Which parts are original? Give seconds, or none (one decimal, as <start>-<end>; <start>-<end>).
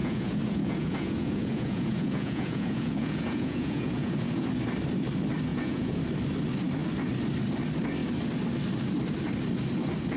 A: 4.5-5.5; 6.0-10.2